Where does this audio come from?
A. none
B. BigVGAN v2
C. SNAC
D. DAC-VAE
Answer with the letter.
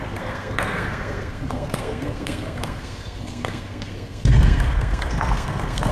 C